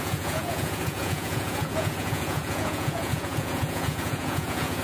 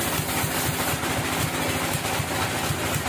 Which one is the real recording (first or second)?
second